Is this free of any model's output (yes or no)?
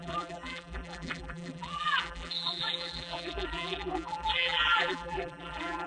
no